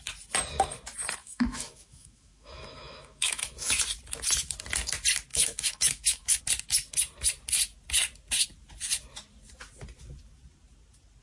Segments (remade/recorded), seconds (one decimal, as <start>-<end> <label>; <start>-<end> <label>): 0.0-1.2 recorded; 1.2-3.8 remade; 3.8-5.3 recorded; 5.3-6.4 remade; 6.4-11.2 recorded